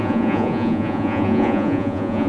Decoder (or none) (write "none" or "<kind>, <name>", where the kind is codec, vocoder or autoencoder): vocoder, Vocos